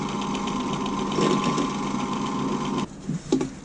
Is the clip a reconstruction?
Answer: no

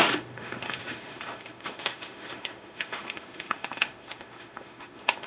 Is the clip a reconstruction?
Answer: yes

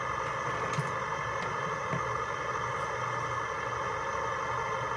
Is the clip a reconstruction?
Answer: no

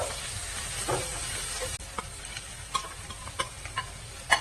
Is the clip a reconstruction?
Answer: no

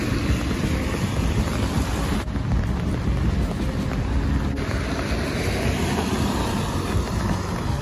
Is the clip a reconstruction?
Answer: no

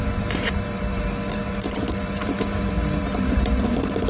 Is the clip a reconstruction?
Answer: yes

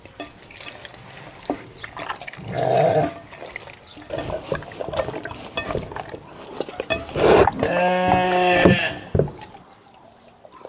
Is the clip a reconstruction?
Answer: no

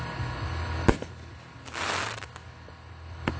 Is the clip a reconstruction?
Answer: no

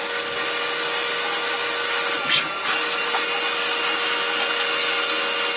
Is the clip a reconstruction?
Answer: no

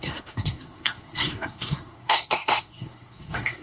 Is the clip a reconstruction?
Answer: yes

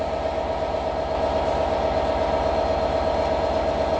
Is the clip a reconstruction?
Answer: no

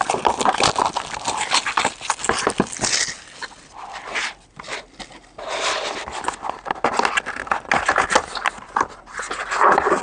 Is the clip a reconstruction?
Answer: no